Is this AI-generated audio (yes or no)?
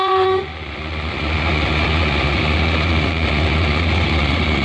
yes